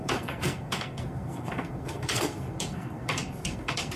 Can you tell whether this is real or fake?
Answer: fake